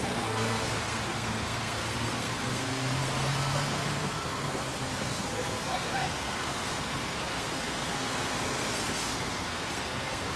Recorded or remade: remade